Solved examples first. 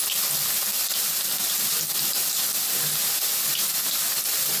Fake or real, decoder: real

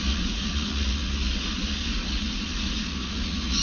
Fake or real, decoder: fake, vocoder, Vocos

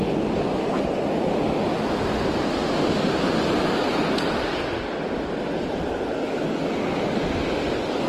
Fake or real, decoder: real